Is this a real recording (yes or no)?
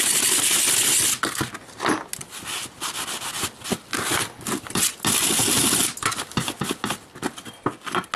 yes